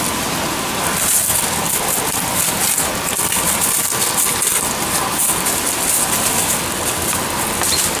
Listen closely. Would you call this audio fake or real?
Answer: real